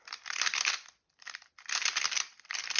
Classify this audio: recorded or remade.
recorded